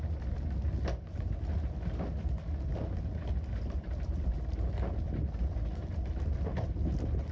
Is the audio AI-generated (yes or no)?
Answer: no